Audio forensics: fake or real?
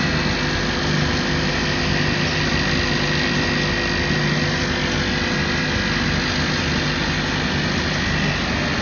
real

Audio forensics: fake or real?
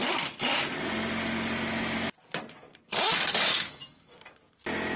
real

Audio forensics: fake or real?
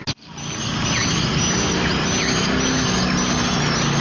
real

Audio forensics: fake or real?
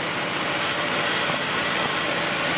real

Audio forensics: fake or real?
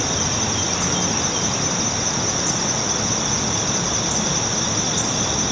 real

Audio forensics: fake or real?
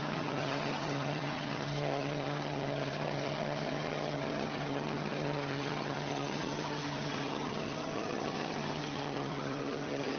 fake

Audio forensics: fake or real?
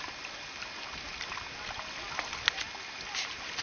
real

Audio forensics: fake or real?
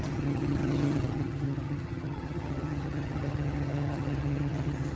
fake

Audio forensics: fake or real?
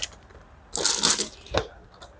real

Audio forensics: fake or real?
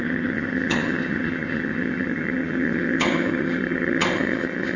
fake